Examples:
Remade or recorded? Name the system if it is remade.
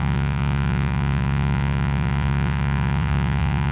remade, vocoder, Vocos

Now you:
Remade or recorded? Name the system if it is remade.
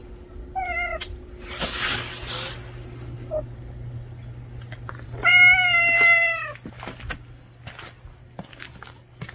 recorded